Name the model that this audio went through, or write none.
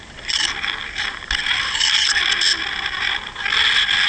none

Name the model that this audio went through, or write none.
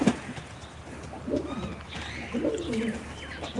none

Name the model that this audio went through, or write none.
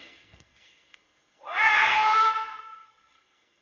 codec, SNAC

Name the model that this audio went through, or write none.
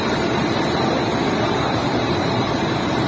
vocoder, BigVGAN v2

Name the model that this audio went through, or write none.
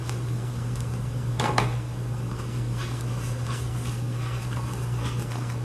codec, SNAC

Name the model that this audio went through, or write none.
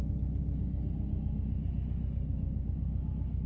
none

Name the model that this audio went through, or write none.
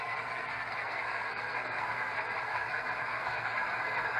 codec, SNAC